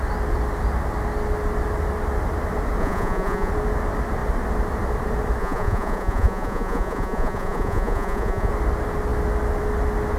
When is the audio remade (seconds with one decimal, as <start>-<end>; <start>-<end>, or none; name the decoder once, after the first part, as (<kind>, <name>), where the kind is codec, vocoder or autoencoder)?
2.8-3.5 (vocoder, Vocos); 5.4-8.5